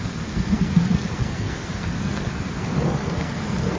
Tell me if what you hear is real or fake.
fake